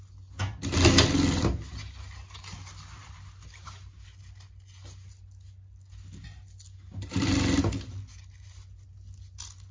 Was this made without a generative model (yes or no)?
yes